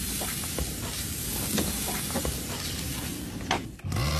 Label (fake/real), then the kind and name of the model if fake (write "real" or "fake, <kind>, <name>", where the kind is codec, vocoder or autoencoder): real